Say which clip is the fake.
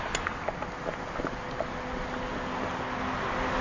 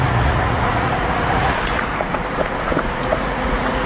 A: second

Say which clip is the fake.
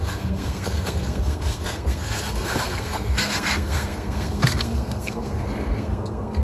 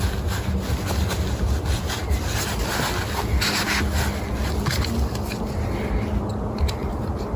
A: first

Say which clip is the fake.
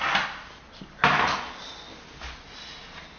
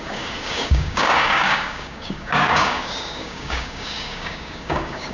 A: second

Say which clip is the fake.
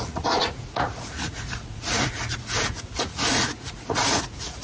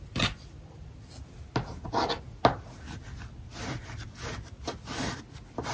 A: first